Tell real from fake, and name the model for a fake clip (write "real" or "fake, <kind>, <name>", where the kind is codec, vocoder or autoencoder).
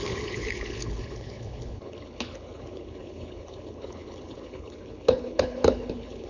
fake, codec, HILCodec